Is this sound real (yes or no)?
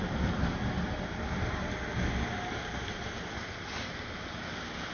yes